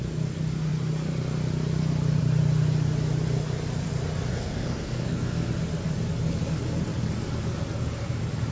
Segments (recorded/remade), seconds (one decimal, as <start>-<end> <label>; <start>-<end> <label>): 0.0-4.3 recorded; 4.3-5.5 remade; 5.5-8.5 recorded